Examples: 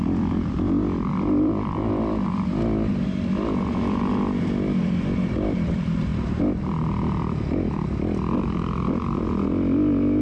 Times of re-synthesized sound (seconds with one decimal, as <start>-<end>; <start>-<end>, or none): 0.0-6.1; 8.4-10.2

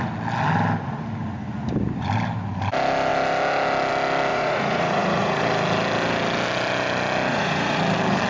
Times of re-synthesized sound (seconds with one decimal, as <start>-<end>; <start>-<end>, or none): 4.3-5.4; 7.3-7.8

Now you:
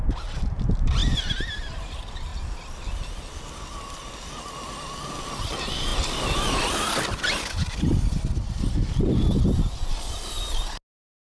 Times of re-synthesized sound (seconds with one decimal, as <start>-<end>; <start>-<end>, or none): none

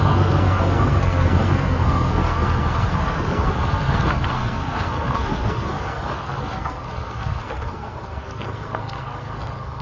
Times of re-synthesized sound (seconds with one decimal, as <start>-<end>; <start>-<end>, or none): 0.0-9.8

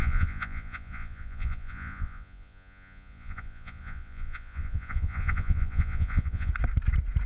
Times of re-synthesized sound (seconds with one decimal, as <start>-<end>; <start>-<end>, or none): 0.0-6.5

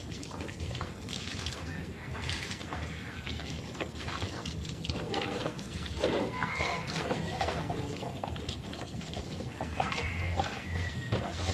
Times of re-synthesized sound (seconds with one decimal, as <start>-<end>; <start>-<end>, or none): 0.0-11.5

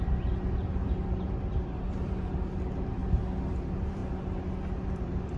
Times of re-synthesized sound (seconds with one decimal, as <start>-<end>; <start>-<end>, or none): 0.0-3.0; 3.5-4.0; 4.9-5.4